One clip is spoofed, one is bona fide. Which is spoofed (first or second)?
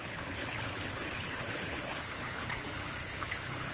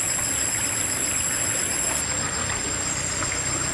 first